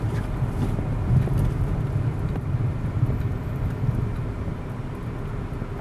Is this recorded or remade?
recorded